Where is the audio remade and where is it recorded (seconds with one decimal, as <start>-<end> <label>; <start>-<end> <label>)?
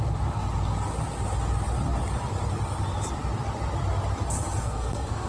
0.0-4.6 recorded; 4.6-5.3 remade